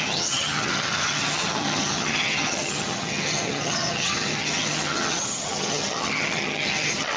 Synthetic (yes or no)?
yes